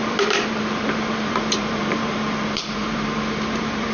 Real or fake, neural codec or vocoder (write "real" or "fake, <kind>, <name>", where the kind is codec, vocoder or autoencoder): fake, vocoder, BigVGAN v2